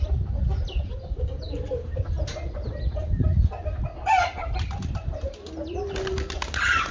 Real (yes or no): yes